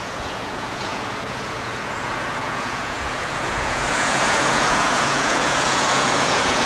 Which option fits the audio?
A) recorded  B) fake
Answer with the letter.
B